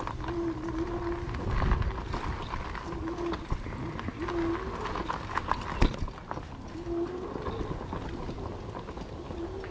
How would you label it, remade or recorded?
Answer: recorded